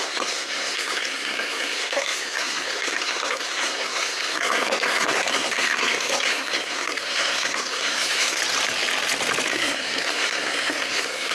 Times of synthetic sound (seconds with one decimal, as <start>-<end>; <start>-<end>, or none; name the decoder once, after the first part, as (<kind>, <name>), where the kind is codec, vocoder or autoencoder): 0.0-8.4 (codec, SNAC); 9.5-11.3